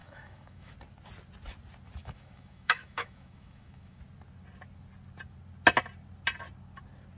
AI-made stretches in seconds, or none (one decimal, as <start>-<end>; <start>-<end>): 0.0-0.7; 2.0-4.0